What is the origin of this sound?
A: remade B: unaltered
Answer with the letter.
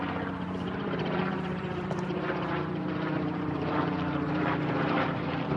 A